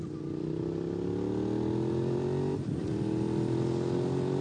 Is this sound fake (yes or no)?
no